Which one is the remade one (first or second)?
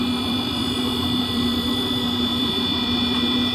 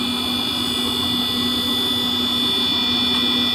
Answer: first